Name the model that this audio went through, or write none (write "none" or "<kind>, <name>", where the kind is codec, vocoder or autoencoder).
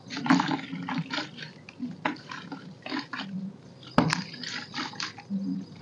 none